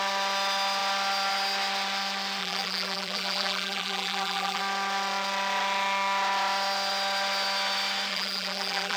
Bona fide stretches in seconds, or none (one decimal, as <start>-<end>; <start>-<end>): 0.0-2.4; 4.6-8.1